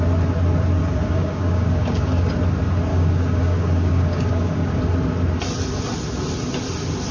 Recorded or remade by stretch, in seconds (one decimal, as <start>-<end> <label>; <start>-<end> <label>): 0.0-0.8 recorded; 0.8-2.3 remade; 2.3-2.9 recorded; 2.9-4.8 remade; 4.8-7.1 recorded